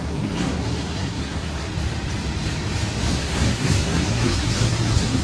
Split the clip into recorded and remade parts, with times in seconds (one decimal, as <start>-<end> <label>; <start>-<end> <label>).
0.0-1.7 remade; 1.7-3.1 recorded; 3.1-5.2 remade